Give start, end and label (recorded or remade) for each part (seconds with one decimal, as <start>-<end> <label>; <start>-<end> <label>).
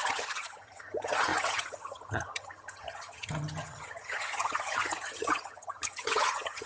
0.0-6.7 remade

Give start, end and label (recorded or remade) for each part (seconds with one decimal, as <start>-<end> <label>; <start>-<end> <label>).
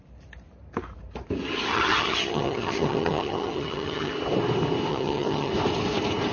0.0-1.7 recorded; 1.7-4.1 remade; 4.1-4.9 recorded; 4.9-5.5 remade; 5.5-6.3 recorded